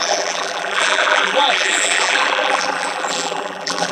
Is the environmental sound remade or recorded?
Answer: remade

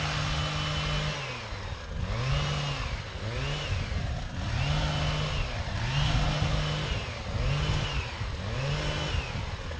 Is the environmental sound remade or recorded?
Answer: recorded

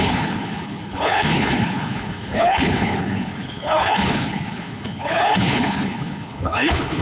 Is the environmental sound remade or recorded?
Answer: remade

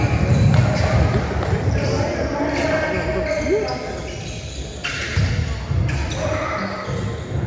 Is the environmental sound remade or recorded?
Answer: recorded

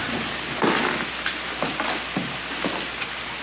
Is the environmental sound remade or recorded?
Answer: recorded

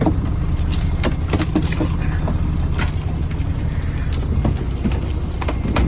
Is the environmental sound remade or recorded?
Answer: recorded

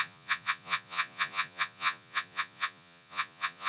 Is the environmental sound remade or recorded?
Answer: remade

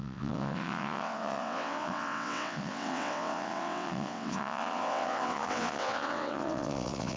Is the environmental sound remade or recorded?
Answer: remade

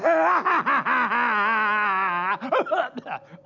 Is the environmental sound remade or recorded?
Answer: recorded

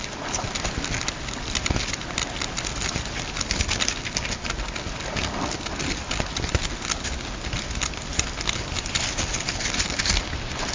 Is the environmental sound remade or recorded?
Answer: recorded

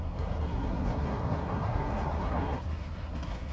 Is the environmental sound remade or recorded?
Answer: remade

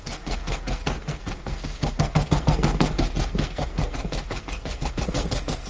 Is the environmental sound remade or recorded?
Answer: remade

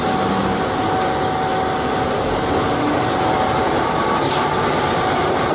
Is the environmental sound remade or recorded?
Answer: recorded